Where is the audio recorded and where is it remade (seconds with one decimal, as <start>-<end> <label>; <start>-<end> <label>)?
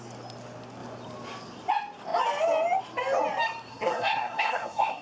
0.0-3.7 recorded; 3.7-5.0 remade